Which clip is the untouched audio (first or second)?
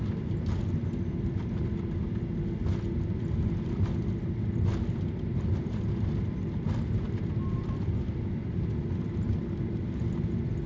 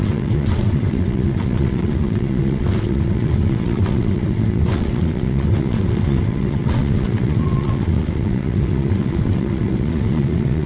first